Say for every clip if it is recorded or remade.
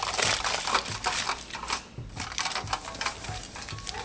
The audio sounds recorded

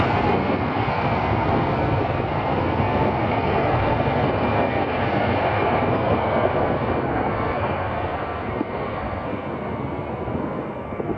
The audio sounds remade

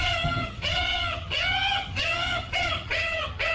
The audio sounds remade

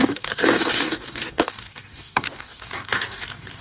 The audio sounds remade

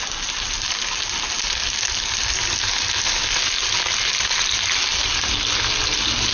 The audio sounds recorded